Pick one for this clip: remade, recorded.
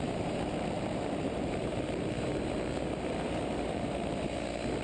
remade